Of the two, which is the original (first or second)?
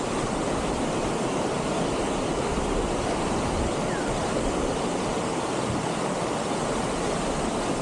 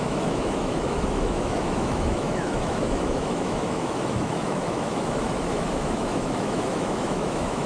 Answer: first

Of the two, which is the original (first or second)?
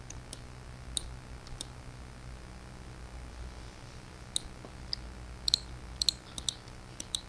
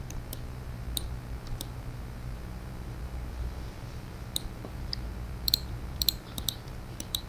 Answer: first